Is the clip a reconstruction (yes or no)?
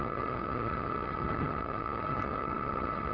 yes